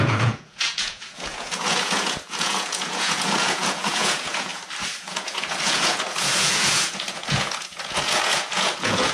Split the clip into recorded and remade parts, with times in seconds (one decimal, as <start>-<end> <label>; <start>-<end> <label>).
0.0-4.5 remade; 4.5-5.0 recorded; 5.0-9.1 remade